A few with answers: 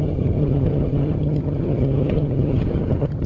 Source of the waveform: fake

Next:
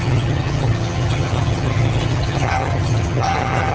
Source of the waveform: fake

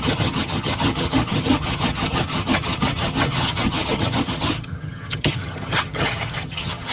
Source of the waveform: fake